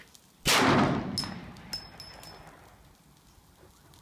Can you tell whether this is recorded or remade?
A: recorded